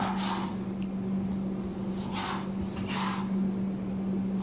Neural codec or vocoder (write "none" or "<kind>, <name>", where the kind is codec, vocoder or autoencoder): none